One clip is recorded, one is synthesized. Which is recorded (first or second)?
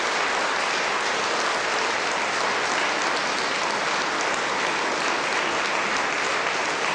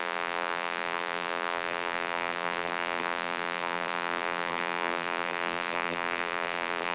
first